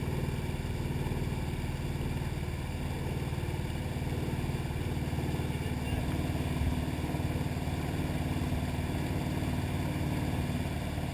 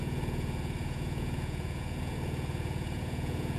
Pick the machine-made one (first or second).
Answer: second